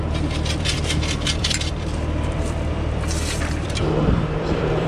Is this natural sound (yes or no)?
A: no